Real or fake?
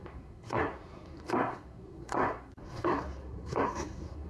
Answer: fake